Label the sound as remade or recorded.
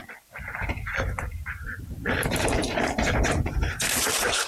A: remade